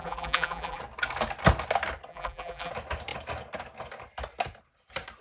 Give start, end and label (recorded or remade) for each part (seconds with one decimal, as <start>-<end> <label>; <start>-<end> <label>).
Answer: 0.0-0.8 remade; 0.8-2.1 recorded; 2.1-2.7 remade; 2.7-5.2 recorded